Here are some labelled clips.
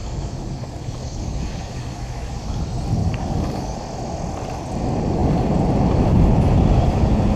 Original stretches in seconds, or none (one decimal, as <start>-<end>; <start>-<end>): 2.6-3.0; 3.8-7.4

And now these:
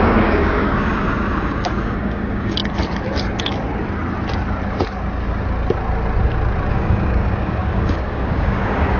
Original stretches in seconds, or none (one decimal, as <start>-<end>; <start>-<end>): 2.6-6.7

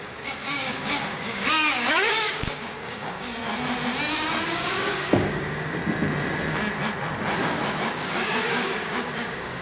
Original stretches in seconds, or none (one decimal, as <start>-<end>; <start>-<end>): 3.4-4.5; 5.8-7.4

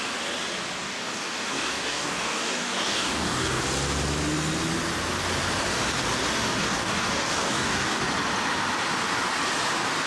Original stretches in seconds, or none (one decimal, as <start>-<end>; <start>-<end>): 0.0-0.8; 3.6-6.6; 8.0-10.1

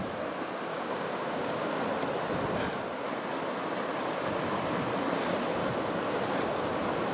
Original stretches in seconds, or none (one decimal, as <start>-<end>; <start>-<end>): 0.0-0.7; 1.8-7.1

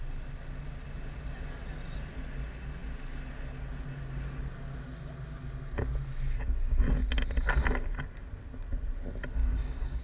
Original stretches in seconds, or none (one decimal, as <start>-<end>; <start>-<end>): 0.0-9.4

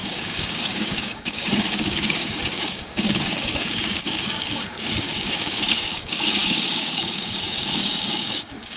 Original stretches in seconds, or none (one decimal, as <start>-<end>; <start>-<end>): none

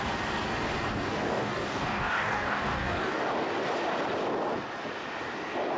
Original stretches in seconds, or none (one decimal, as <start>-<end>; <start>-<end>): 0.0-1.1; 3.3-5.8